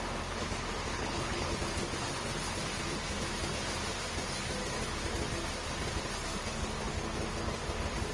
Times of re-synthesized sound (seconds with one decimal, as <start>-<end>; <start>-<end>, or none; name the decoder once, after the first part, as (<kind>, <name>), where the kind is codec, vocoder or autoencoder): 0.9-1.6 (codec, HILCodec)

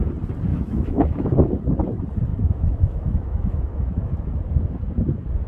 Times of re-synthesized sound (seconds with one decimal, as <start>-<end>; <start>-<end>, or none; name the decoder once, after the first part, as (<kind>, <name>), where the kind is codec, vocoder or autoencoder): 0.5-1.5 (autoencoder, DAC-VAE); 2.3-4.3

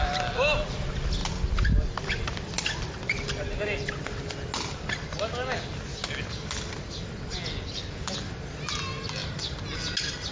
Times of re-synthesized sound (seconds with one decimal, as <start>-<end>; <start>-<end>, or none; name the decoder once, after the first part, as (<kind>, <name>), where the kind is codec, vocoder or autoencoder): none

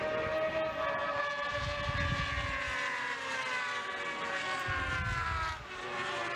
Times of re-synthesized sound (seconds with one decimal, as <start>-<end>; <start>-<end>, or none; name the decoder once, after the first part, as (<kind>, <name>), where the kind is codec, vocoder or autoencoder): none